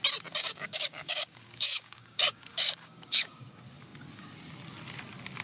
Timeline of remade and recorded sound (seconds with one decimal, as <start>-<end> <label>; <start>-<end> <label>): 0.0-0.4 recorded; 0.4-3.4 remade; 3.4-5.4 recorded